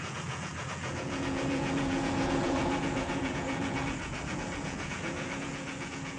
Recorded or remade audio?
remade